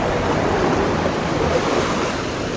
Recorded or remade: recorded